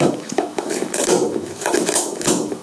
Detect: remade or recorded remade